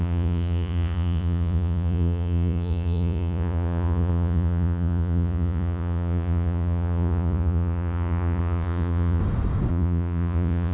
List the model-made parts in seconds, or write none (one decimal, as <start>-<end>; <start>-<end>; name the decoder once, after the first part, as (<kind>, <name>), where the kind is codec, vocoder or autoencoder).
0.0-9.2 (vocoder, Vocos); 9.7-10.7